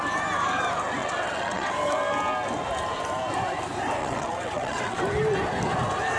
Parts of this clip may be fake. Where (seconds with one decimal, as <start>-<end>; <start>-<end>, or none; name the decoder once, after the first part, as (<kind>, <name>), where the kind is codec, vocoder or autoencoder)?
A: 1.0-1.7 (vocoder, WaveNeXt); 4.0-5.0